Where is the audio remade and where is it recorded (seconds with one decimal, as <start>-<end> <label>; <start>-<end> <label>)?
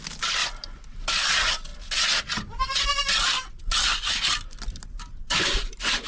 0.0-6.1 recorded